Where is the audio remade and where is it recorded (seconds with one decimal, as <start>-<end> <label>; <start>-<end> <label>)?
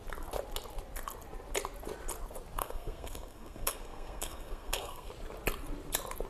0.0-2.6 recorded; 2.6-5.1 remade; 5.1-6.3 recorded